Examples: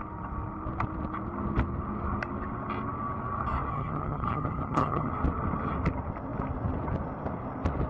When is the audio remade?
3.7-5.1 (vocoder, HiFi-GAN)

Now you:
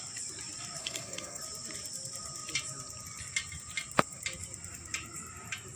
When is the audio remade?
0.8-1.4 (codec, SNAC)

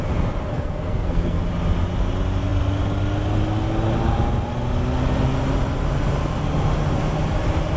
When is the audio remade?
0.5-1.4 (codec, SNAC)

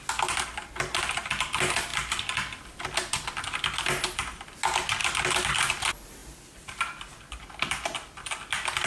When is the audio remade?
none

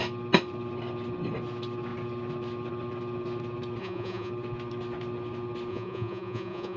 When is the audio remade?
3.8-4.3 (vocoder, Vocos); 5.7-6.8

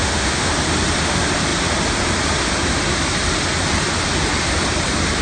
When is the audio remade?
0.0-0.5 (autoencoder, DAC-VAE)

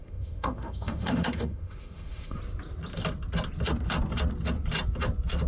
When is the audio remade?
0.0-2.4 (autoencoder, DAC-VAE)